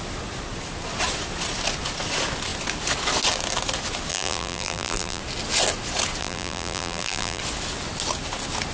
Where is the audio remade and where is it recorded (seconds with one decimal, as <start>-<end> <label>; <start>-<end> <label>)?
0.0-4.1 recorded; 4.1-5.2 remade; 5.2-6.2 recorded; 6.2-7.4 remade; 7.4-8.7 recorded